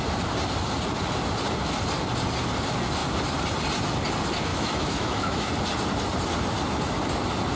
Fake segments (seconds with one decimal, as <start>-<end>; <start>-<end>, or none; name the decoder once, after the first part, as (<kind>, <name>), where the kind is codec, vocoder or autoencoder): 4.5-5.5 (autoencoder, DAC-VAE)